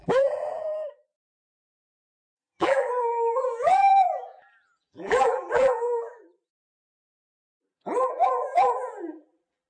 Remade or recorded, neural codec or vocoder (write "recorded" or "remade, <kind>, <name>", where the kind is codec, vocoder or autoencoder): remade, vocoder, BigVGAN v2